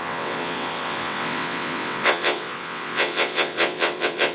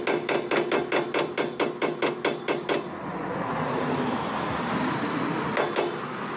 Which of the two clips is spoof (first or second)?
first